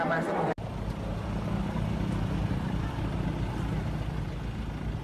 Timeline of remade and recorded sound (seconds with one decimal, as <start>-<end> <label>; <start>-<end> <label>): 0.0-2.4 recorded; 2.4-3.0 remade; 3.0-5.0 recorded